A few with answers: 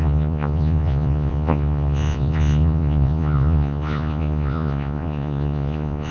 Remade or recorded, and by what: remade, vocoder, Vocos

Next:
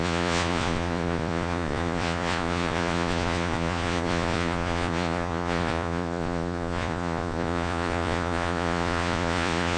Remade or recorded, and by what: remade, vocoder, Vocos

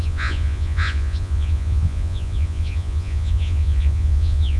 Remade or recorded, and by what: remade, vocoder, Vocos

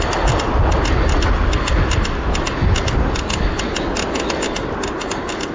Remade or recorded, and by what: recorded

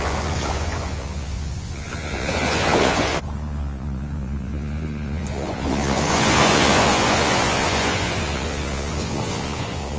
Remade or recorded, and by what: remade, vocoder, Vocos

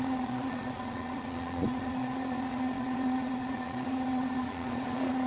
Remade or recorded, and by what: remade, vocoder, Vocos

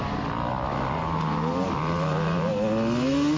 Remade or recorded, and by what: recorded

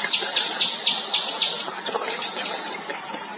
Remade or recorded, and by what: recorded